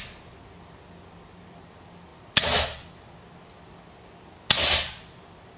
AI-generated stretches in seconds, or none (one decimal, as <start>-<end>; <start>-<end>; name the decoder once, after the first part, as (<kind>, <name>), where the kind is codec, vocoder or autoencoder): none